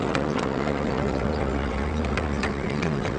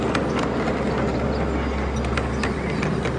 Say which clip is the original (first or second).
second